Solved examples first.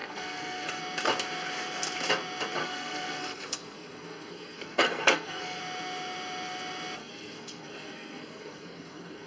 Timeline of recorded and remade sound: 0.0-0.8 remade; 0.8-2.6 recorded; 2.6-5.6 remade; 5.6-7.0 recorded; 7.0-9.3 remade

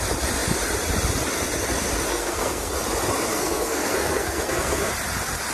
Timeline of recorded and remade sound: 0.0-2.1 recorded; 2.1-2.7 remade; 2.7-3.3 recorded; 3.3-4.9 remade; 4.9-5.5 recorded

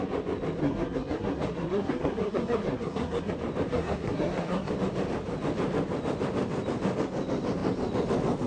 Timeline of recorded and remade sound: 0.0-0.6 recorded; 0.6-3.3 remade; 3.3-3.7 recorded; 3.7-4.7 remade; 4.7-8.5 recorded

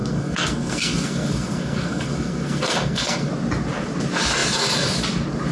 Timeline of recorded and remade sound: 0.0-3.3 remade; 3.3-5.5 recorded

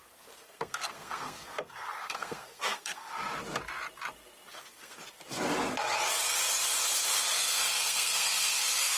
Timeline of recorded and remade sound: 0.0-3.1 remade; 3.1-4.5 recorded; 4.5-5.0 remade; 5.0-7.3 recorded; 7.3-9.0 remade

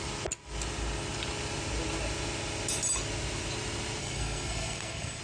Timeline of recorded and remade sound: 0.0-4.0 recorded; 4.0-5.2 remade